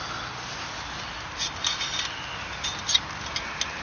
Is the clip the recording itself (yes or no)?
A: yes